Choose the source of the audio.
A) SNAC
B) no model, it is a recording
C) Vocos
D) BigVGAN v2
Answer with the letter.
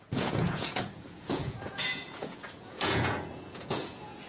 C